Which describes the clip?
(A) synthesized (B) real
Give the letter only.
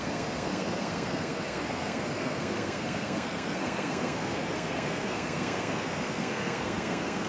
A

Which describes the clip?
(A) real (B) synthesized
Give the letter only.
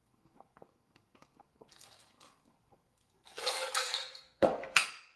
B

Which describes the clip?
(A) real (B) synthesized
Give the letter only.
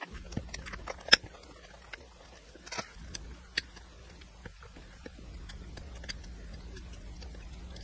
A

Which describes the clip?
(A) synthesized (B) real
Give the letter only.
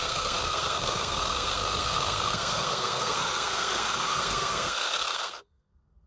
A